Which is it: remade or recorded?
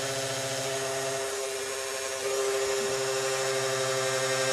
recorded